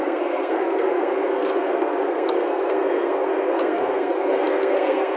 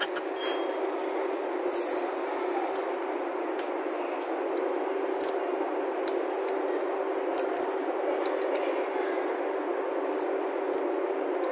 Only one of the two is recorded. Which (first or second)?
second